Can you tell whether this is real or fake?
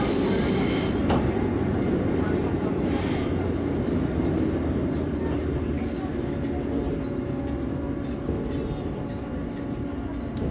real